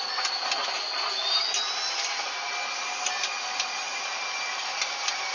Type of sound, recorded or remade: recorded